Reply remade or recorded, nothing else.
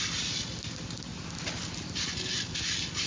recorded